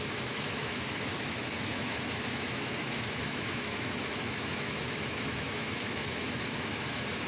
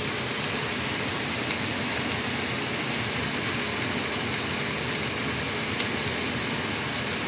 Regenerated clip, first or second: first